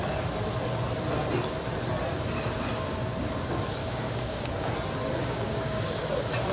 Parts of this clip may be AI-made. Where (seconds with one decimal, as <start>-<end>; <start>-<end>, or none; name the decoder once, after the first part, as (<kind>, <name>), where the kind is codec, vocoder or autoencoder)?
3.8-4.5 (codec, DAC); 5.2-6.1